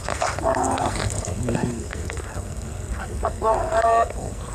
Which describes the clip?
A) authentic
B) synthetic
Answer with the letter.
B